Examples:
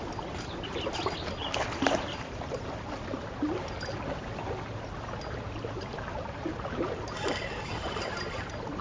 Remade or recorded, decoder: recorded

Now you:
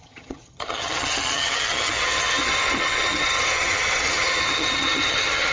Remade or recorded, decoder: remade, vocoder, HiFi-GAN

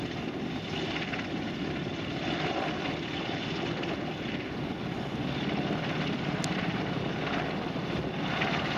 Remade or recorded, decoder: recorded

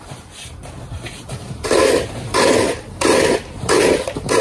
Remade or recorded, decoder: recorded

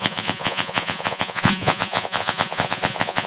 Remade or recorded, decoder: remade, vocoder, Vocos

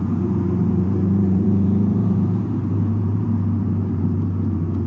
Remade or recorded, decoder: remade, vocoder, BigVGAN v2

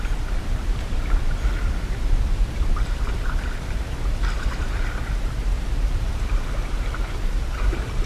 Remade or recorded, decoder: remade, vocoder, BigVGAN v2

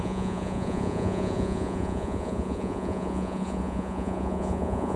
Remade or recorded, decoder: remade, vocoder, Vocos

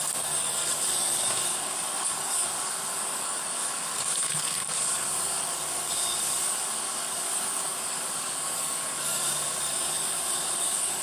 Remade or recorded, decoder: remade, codec, DAC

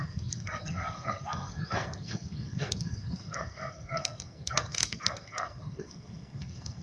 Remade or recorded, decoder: remade, codec, SNAC